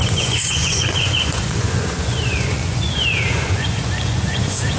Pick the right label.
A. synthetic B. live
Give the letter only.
A